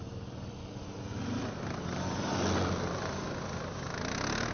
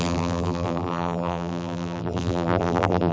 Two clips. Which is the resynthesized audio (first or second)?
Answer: second